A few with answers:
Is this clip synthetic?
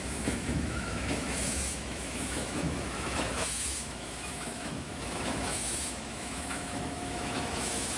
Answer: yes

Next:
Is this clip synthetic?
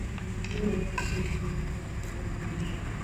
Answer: no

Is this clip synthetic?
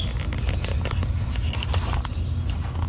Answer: no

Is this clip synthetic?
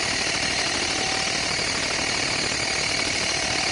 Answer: no